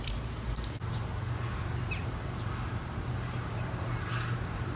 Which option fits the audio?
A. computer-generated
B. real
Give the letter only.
A